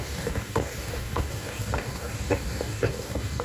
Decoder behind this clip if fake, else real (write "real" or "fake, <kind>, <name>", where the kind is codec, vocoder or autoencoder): fake, codec, DAC